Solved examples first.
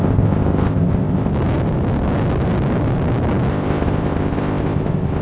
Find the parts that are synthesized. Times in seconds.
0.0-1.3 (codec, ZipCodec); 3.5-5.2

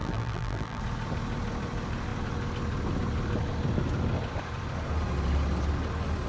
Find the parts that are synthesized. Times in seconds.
0.0-0.8 (vocoder, BigVGAN v2)

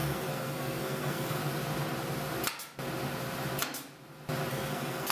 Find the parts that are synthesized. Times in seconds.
0.0-1.4 (codec, SNAC); 4.5-5.1